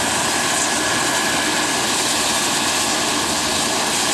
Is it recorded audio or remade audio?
recorded